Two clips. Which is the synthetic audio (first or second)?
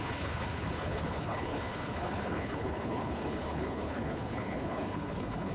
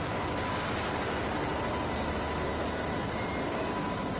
first